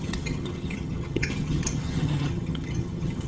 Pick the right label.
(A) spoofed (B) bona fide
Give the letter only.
A